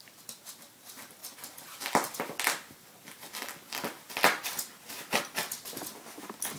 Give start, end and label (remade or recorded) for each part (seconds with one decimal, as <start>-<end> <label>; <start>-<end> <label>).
0.0-6.6 recorded